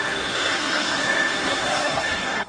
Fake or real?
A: fake